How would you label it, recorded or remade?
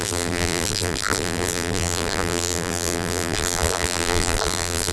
remade